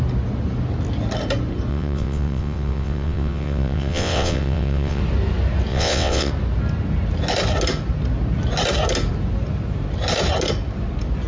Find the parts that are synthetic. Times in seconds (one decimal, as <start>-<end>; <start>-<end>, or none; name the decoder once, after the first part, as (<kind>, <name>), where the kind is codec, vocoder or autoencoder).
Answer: 1.7-5.0 (vocoder, WaveNeXt); 5.7-6.3